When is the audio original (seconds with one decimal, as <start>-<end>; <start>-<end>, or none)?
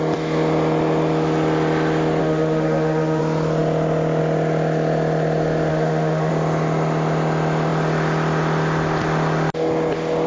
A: 0.0-2.2; 3.2-5.7; 6.3-10.3